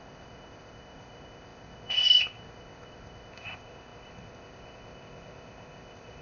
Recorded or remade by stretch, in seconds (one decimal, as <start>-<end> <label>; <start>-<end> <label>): 0.0-6.2 remade

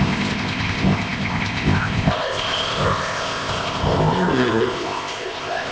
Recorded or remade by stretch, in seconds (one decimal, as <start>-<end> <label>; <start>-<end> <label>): 0.0-5.7 remade